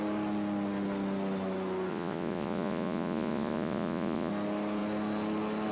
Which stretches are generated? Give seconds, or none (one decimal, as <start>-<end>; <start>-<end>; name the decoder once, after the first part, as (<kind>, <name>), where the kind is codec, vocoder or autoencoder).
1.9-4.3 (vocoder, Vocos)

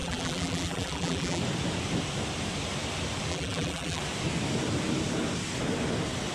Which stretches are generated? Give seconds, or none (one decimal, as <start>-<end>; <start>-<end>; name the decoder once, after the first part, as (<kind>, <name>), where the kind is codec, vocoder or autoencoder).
0.0-1.4 (vocoder, BigVGAN v2); 3.3-4.0

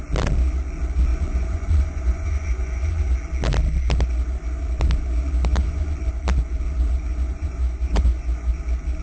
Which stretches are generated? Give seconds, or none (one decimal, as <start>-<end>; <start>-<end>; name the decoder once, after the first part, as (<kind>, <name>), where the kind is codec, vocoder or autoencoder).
1.1-3.1 (vocoder, Vocos); 5.5-6.1; 7.1-8.5